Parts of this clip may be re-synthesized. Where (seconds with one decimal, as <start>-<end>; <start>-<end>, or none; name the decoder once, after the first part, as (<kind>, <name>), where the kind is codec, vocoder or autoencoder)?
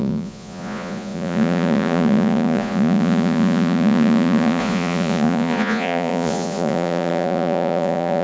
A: 0.0-8.2 (vocoder, Vocos)